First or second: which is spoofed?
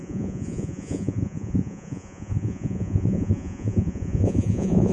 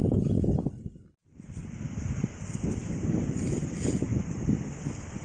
first